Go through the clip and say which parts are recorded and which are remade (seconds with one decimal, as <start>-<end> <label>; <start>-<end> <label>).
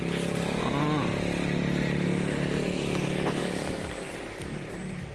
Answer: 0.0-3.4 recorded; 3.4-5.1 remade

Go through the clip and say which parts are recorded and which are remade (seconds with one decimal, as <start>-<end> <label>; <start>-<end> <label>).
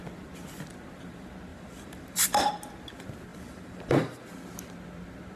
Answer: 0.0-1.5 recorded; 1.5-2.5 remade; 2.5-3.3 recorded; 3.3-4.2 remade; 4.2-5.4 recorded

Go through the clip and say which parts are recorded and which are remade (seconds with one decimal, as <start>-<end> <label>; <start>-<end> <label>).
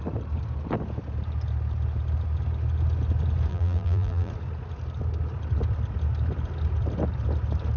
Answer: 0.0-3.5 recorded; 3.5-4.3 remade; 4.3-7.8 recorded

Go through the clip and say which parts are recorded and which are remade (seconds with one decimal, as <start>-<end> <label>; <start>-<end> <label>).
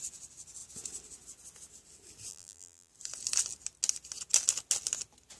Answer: 0.0-2.3 recorded; 2.3-2.9 remade; 2.9-5.4 recorded